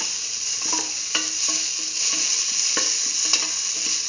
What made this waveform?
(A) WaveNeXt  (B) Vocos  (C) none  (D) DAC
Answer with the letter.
C